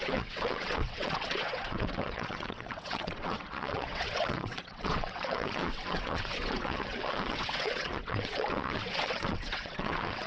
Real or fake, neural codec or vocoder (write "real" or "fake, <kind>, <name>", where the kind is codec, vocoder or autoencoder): fake, vocoder, WaveNeXt